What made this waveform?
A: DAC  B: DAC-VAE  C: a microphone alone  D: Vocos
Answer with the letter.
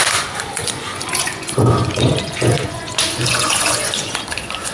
D